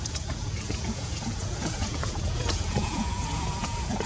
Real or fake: fake